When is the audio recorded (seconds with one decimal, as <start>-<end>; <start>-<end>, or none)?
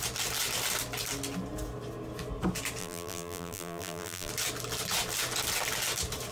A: 0.0-2.8; 4.3-6.3